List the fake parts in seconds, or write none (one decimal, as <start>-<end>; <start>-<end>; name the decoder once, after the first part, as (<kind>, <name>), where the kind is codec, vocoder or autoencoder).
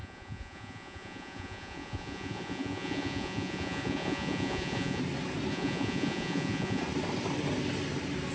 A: 0.0-5.0 (vocoder, Vocos); 5.5-6.8